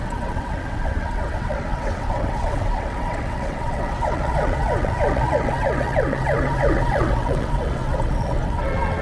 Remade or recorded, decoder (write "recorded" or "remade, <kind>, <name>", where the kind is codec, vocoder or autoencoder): remade, vocoder, WaveNeXt